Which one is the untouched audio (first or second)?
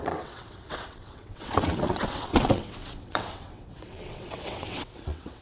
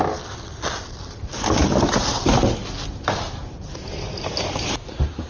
second